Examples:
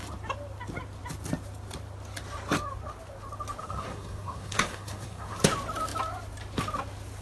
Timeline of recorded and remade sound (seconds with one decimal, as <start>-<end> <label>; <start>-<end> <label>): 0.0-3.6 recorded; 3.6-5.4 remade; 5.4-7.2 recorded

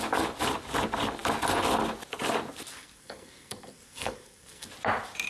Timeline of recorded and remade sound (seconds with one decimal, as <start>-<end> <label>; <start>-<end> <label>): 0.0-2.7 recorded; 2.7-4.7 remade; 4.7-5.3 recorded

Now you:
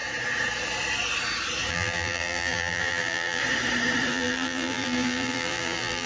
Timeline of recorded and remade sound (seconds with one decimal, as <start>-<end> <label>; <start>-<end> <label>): 0.0-1.7 recorded; 1.7-3.4 remade; 3.4-4.1 recorded; 4.1-6.1 remade